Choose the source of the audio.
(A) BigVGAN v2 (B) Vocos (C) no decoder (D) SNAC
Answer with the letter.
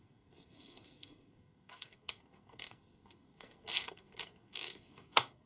D